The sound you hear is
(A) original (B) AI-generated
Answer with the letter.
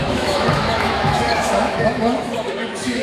B